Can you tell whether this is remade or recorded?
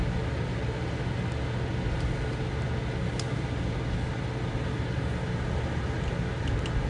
recorded